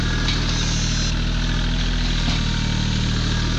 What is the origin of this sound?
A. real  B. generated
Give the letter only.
A